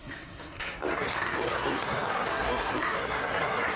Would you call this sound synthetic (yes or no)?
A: yes